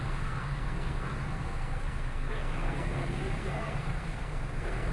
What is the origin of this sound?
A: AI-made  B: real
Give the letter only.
A